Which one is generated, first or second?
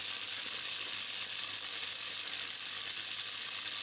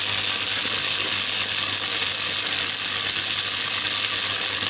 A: first